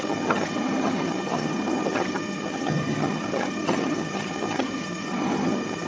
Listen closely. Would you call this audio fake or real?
fake